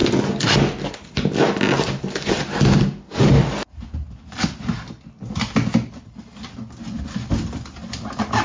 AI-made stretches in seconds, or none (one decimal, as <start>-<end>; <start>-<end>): none